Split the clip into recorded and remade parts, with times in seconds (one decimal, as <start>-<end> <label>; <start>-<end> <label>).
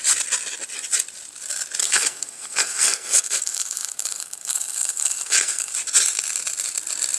0.0-1.8 recorded; 1.8-5.7 remade; 5.7-7.2 recorded